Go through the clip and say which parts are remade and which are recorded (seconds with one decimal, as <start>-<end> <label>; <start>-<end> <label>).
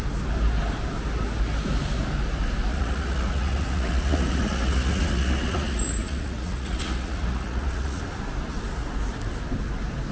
0.0-2.7 recorded; 2.7-8.0 remade; 8.0-10.1 recorded